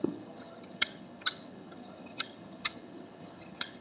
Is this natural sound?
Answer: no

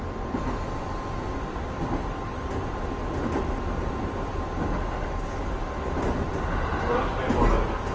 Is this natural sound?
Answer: yes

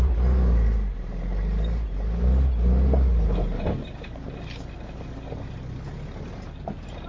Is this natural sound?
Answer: yes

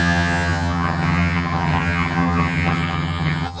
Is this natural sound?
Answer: no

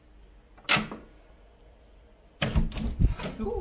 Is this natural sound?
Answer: yes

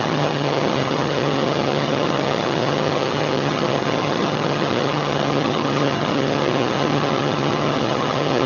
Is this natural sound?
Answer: no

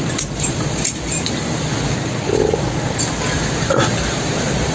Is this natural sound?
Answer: yes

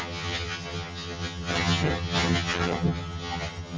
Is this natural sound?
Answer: no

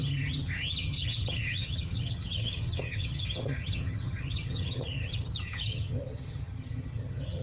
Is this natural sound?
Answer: no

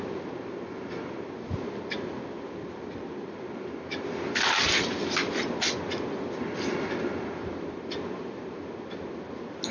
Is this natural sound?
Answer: yes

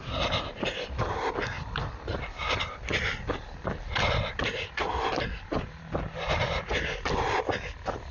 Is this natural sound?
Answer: yes